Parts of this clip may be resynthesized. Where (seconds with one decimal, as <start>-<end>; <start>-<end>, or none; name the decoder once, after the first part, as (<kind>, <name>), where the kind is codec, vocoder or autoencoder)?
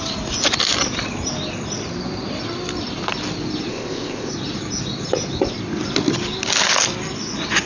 3.7-4.3 (codec, ZipCodec)